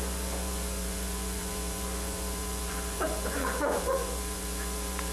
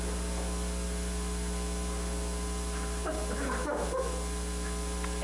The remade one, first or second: first